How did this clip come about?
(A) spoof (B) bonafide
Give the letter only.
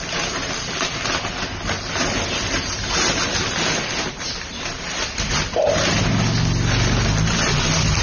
B